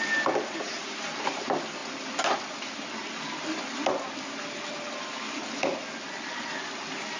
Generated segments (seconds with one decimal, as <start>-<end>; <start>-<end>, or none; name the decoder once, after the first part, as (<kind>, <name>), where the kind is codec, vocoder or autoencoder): none

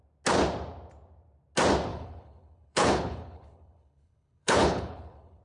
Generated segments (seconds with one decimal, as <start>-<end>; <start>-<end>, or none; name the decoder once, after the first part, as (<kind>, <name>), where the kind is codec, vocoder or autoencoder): 1.9-5.4 (codec, HILCodec)

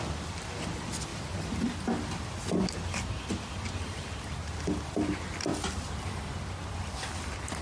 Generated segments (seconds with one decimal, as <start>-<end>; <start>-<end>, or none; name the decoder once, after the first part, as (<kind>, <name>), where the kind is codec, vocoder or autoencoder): 1.1-1.7 (vocoder, BigVGAN v2)

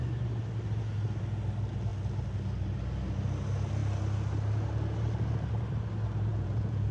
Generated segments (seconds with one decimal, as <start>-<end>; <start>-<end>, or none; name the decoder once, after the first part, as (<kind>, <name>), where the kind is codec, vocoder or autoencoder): 6.3-6.9 (vocoder, Vocos)